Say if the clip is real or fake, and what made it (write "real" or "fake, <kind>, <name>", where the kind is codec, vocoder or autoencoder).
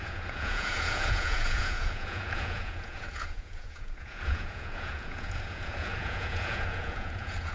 fake, vocoder, Vocos